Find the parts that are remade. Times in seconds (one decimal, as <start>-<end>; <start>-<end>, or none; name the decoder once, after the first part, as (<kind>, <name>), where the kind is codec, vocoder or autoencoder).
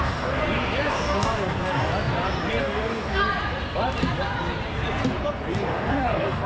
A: 0.0-0.4 (codec, DAC); 0.9-1.9; 2.6-3.2; 5.6-6.5